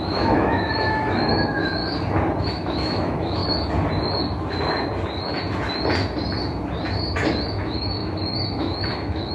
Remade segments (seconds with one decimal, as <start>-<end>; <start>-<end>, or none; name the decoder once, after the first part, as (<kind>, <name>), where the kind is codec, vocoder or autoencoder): 0.0-1.8 (autoencoder, DAC-VAE); 2.4-3.4; 7.5-9.3